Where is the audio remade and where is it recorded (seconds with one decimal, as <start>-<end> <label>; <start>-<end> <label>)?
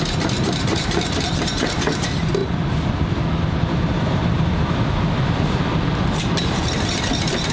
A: 0.0-2.4 remade; 2.4-3.6 recorded; 3.6-7.5 remade